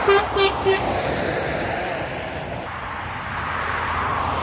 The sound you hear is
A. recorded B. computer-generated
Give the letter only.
B